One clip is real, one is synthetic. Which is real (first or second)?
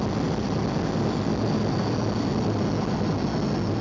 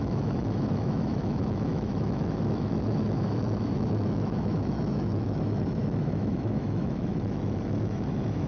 first